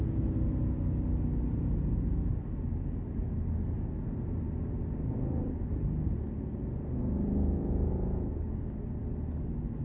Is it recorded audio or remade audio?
recorded